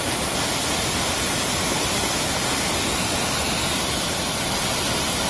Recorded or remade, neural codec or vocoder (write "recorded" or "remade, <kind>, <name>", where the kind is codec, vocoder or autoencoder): recorded